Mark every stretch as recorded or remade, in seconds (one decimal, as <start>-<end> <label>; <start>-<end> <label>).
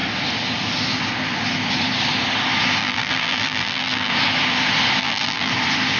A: 0.0-2.8 recorded; 2.8-4.1 remade; 4.1-5.0 recorded; 5.0-5.5 remade; 5.5-6.0 recorded